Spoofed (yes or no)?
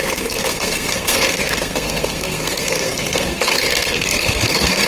yes